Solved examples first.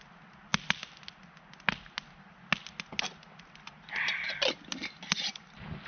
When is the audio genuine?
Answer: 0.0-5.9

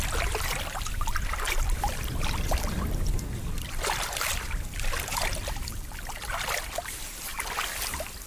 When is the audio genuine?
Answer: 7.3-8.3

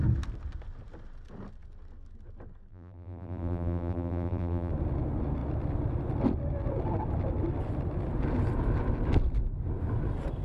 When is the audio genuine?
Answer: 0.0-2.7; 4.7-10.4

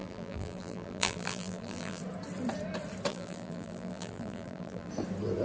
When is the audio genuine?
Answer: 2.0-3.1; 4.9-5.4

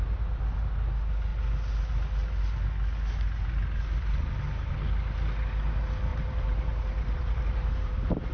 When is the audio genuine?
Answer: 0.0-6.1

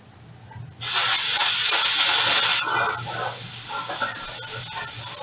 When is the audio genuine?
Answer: 0.0-5.2